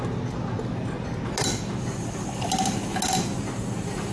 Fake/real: real